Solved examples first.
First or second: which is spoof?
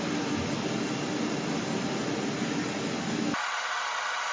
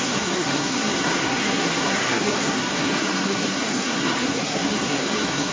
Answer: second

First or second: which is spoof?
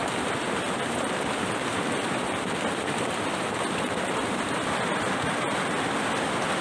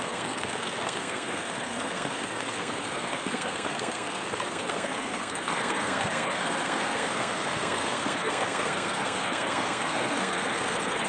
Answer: second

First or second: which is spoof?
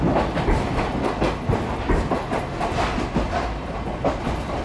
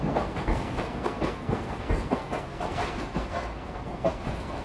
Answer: second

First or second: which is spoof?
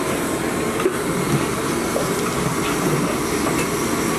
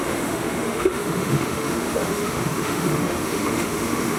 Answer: second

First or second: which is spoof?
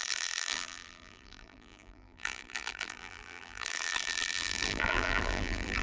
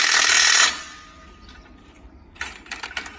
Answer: first